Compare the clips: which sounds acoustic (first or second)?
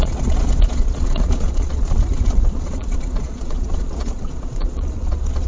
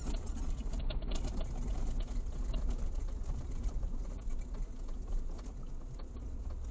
second